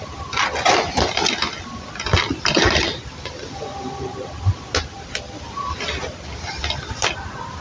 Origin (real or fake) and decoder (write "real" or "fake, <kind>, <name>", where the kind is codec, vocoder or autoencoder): real